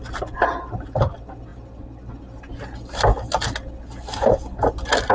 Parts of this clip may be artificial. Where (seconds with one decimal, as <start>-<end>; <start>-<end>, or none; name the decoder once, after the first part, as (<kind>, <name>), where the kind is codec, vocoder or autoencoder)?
none